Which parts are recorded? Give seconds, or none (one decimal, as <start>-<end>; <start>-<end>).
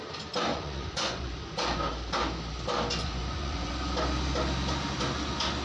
0.0-0.5; 1.8-3.0; 3.7-5.6